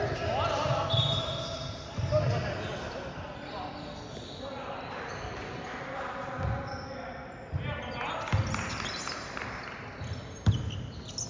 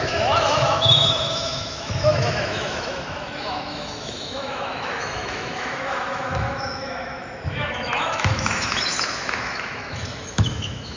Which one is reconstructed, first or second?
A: second